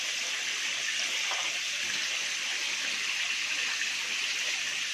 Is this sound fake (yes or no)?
no